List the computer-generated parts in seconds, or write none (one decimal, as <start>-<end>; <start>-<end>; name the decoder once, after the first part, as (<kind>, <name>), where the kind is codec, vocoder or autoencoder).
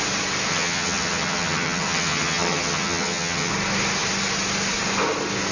0.5-3.5 (vocoder, HiFi-GAN)